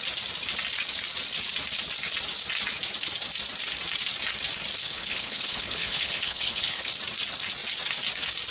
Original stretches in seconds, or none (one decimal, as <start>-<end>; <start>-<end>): 0.0-4.8; 6.9-8.5